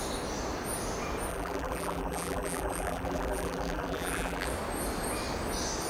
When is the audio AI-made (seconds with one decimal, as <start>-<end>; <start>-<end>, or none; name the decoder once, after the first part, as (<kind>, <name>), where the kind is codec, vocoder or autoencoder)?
1.3-4.5 (vocoder, BigVGAN v2)